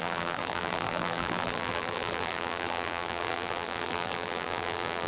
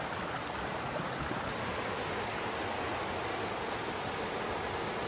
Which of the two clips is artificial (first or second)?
first